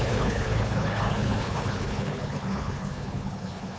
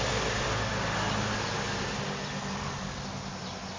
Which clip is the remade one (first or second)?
first